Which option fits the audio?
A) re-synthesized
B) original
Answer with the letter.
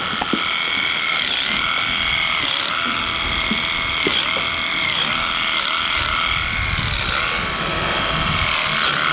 B